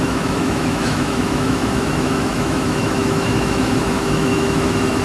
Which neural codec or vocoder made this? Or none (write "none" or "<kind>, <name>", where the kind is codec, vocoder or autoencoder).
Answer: autoencoder, DAC-VAE